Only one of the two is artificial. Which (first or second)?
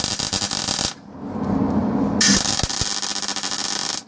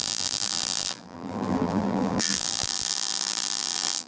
second